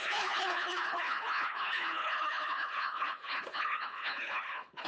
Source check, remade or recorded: remade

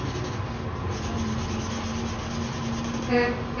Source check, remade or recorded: recorded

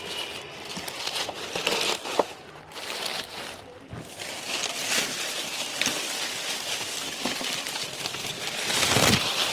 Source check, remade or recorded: recorded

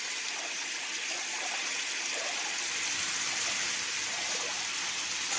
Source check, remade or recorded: recorded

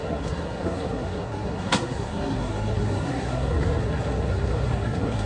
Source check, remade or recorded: remade